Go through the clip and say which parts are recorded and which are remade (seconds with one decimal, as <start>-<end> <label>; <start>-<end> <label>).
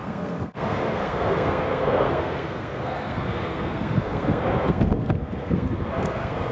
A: 0.0-6.5 remade